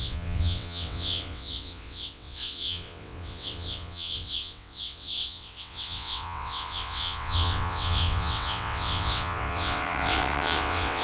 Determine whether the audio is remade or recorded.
remade